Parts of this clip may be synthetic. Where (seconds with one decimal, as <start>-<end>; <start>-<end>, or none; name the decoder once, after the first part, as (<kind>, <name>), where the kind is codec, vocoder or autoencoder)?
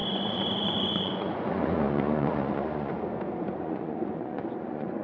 0.0-2.9 (vocoder, Vocos); 3.6-5.0